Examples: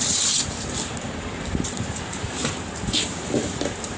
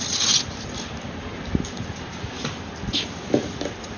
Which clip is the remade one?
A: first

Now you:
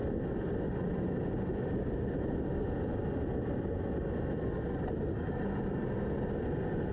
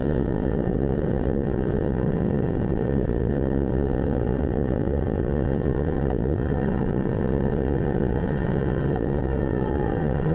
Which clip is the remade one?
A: second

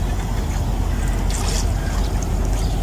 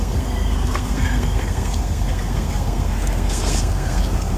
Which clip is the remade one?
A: second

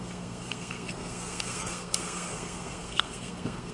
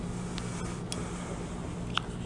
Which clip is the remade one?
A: first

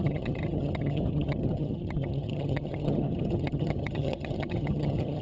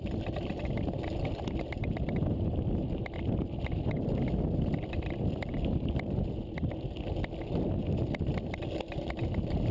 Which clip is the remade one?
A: first